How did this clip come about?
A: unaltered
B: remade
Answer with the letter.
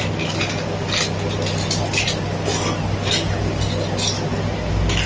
A